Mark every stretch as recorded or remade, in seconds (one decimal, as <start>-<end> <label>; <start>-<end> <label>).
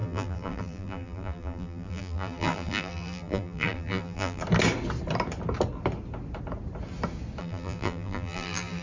0.0-4.4 remade; 4.4-7.4 recorded; 7.4-8.8 remade